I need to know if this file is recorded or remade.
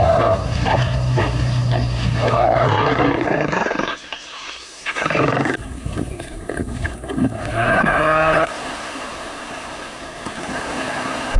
remade